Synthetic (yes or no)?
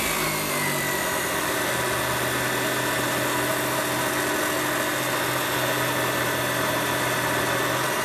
no